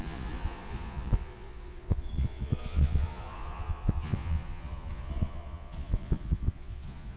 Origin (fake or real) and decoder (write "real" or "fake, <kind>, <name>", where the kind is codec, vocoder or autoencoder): fake, vocoder, Vocos